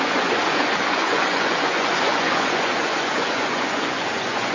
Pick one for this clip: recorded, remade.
remade